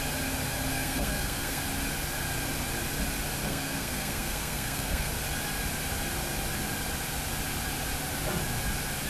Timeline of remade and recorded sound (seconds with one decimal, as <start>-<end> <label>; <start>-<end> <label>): 0.0-0.7 recorded; 0.7-1.6 remade; 1.6-3.4 recorded; 3.4-5.1 remade; 5.1-9.1 recorded